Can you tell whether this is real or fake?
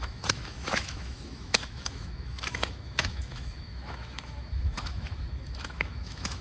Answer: fake